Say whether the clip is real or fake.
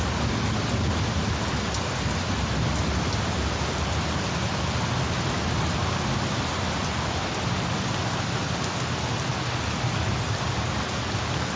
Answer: real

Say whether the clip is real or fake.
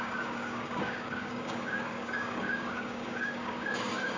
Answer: fake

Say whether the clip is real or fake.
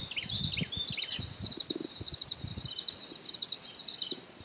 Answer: real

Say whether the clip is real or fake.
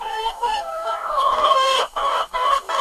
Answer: fake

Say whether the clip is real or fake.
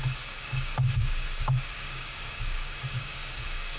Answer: fake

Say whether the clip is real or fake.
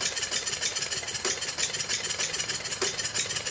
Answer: real